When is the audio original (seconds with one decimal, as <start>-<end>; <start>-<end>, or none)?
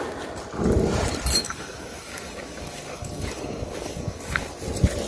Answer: 0.0-1.4; 4.5-5.1